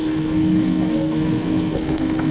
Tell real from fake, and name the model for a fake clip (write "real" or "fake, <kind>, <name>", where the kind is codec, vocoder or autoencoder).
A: fake, codec, SNAC